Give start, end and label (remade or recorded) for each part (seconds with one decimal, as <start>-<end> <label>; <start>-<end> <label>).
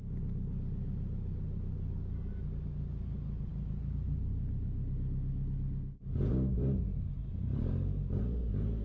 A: 0.0-8.8 recorded